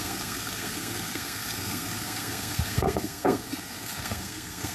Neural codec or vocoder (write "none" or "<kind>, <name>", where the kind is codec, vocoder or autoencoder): codec, SNAC